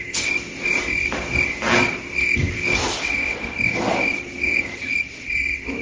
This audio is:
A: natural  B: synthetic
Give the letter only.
A